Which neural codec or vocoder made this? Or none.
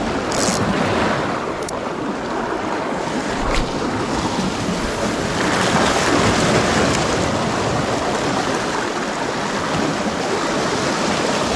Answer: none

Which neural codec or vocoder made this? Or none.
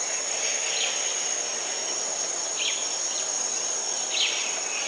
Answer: none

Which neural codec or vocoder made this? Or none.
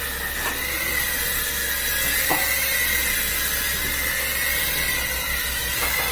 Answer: none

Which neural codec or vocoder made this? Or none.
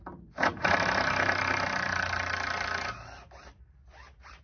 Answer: none